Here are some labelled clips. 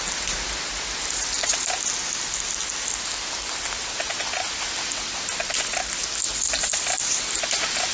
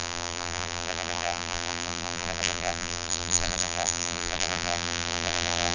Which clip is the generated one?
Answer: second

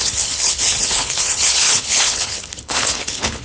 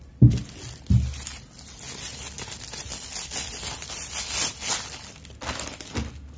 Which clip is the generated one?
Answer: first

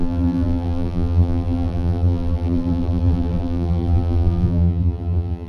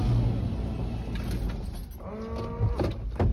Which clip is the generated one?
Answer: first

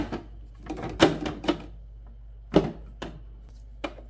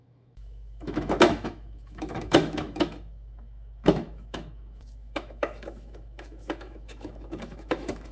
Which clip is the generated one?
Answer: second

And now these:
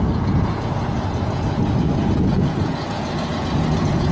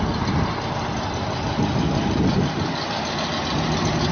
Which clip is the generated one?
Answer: first